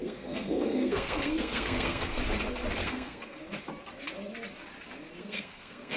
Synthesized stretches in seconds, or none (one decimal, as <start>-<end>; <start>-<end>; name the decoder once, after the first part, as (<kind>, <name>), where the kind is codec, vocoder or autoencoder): 0.0-2.2 (codec, SNAC); 2.8-3.4; 5.2-6.0